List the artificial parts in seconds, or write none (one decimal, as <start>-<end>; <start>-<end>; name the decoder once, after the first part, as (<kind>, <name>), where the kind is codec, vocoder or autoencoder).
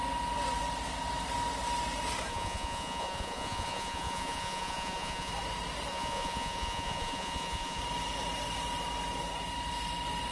2.3-5.3 (vocoder, Vocos); 5.9-7.8